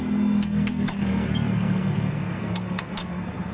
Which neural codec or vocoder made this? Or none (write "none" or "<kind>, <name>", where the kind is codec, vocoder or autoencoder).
codec, SNAC